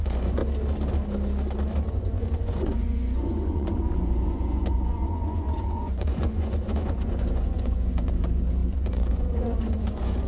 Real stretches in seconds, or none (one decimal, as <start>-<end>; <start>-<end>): 0.4-1.9